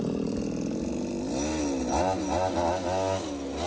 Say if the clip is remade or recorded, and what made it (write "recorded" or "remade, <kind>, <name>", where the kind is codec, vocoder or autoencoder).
recorded